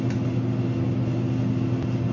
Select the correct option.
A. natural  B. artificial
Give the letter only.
A